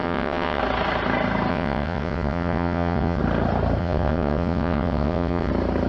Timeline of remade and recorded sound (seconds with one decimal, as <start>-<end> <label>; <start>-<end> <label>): 0.0-0.6 remade; 0.6-1.5 recorded; 1.5-3.2 remade; 3.2-3.8 recorded; 3.8-5.5 remade; 5.5-5.9 recorded